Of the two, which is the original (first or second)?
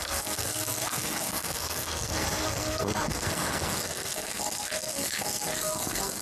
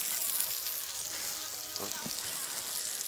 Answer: second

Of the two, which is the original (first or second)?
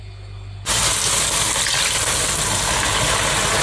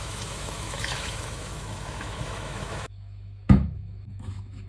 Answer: first